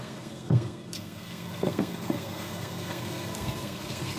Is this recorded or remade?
remade